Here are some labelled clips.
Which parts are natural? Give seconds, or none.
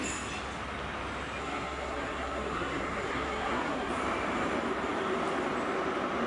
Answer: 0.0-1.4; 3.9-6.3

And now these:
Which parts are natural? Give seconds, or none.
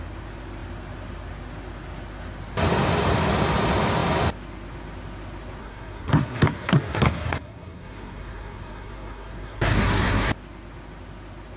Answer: 0.0-5.6; 10.3-11.6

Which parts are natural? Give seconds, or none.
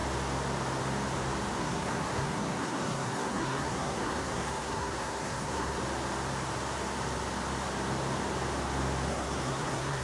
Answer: 0.0-1.6; 5.8-9.1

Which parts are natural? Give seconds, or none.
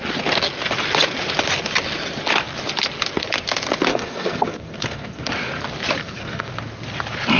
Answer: 0.0-3.9; 5.3-6.0; 6.5-7.4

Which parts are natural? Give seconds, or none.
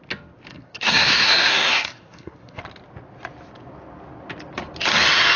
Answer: 0.0-0.5; 2.6-5.4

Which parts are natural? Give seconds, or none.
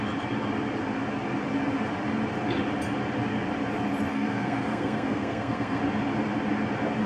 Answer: 0.0-4.1; 5.8-7.1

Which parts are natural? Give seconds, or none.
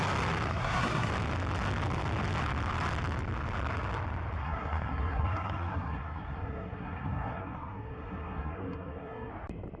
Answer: 0.0-0.5; 1.1-4.4; 9.3-9.8